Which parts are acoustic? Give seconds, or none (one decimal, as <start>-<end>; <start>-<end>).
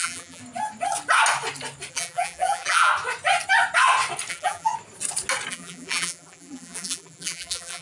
0.4-1.9; 2.9-4.3; 4.7-5.5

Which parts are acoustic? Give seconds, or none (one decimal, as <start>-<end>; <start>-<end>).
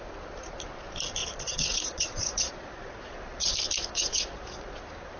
0.0-1.2; 3.5-3.9; 4.8-5.2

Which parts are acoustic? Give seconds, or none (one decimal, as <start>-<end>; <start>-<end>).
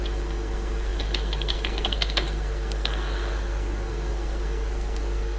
none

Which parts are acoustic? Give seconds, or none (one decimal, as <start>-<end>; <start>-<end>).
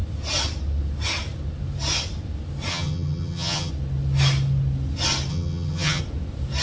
0.0-2.7; 3.7-5.3; 6.0-6.6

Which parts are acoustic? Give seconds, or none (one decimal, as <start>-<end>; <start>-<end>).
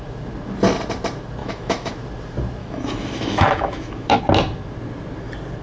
0.0-1.4; 1.9-2.6; 4.2-5.6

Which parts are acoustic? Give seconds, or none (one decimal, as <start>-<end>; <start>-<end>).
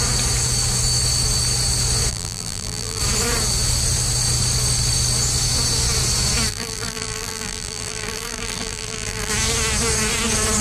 0.0-2.1; 3.0-6.5; 9.3-10.6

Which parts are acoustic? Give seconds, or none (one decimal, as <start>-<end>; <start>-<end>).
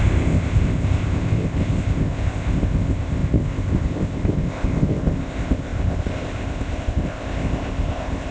none